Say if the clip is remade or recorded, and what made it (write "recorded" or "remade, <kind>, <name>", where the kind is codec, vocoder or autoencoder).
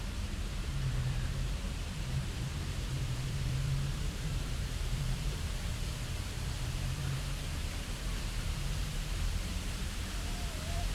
remade, vocoder, BigVGAN v2